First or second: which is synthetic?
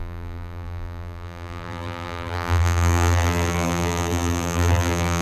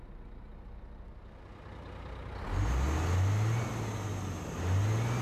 first